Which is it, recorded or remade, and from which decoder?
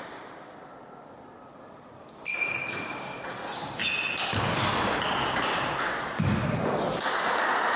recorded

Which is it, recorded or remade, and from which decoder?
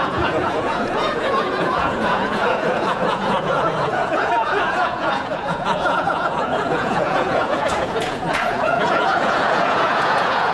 remade, vocoder, Vocos